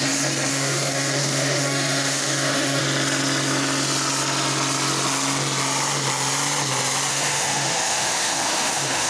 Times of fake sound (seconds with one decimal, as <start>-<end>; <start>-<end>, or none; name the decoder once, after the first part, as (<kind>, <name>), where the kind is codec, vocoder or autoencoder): 0.5-2.8 (autoencoder, DAC-VAE); 7.1-9.1